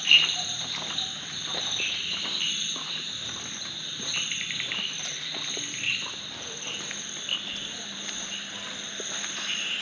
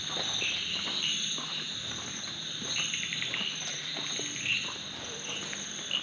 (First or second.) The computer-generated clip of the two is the first